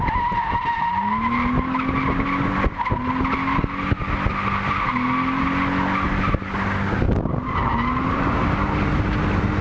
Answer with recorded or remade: recorded